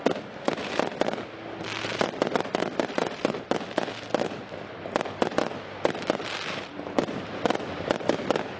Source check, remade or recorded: recorded